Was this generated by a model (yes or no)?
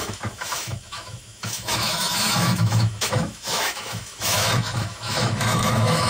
yes